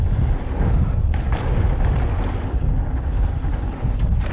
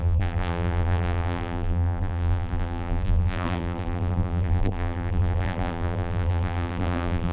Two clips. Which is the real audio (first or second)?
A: first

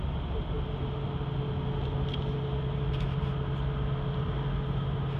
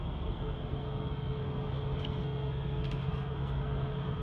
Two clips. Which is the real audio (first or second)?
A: first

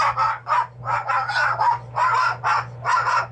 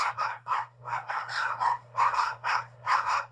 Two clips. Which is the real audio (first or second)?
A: first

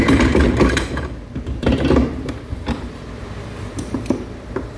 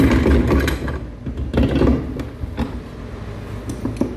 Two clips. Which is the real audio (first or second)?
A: second